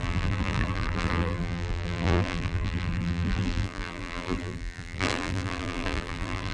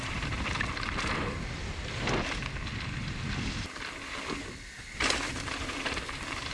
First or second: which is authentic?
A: second